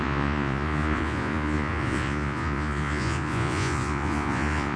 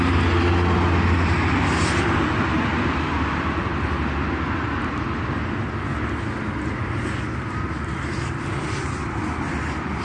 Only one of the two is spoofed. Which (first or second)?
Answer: first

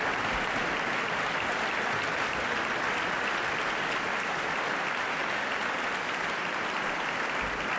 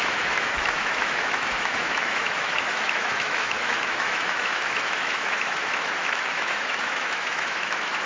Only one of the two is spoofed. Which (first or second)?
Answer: second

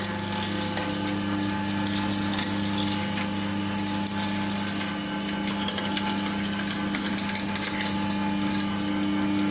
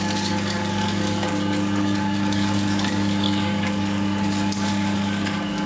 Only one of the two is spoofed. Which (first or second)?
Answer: second